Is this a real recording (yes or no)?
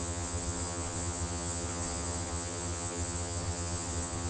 no